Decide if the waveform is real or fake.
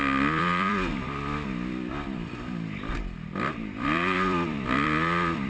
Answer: fake